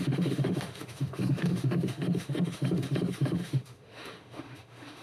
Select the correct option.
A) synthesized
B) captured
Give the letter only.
A